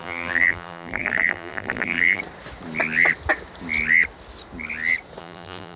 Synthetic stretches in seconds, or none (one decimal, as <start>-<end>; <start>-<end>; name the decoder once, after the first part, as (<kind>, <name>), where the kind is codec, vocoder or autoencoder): 0.0-2.2 (vocoder, BigVGAN v2); 5.2-5.8

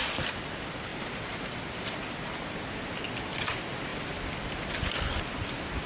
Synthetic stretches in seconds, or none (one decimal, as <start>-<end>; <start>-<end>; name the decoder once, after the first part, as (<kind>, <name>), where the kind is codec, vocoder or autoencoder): none

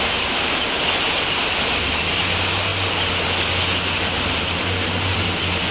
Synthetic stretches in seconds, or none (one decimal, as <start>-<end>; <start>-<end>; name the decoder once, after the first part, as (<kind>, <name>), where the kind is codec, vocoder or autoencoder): none